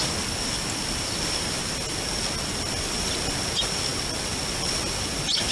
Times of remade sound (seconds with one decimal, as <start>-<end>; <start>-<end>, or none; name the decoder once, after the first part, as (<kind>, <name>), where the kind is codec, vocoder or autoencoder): none